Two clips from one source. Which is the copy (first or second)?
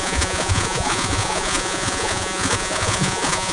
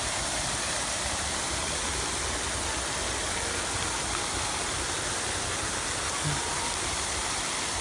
first